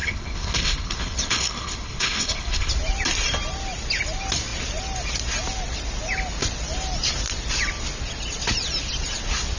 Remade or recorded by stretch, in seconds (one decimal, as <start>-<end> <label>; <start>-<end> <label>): 0.0-2.7 remade; 2.7-9.6 recorded